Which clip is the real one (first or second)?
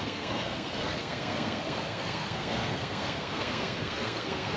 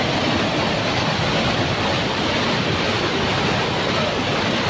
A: second